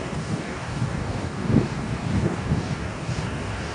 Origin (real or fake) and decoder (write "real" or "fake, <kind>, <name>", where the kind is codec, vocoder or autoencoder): fake, codec, DAC